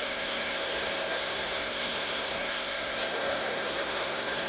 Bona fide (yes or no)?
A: no